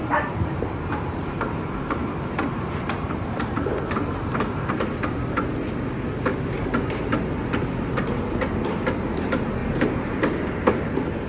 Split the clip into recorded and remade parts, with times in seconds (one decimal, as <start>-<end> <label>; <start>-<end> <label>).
0.0-4.6 remade; 4.6-6.3 recorded; 6.3-7.0 remade; 7.0-9.6 recorded; 9.6-10.1 remade; 10.1-11.3 recorded